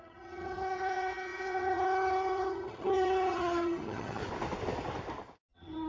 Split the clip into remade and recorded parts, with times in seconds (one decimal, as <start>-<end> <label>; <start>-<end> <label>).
0.0-4.2 remade; 4.2-5.5 recorded; 5.5-5.9 remade